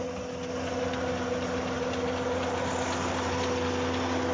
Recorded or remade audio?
recorded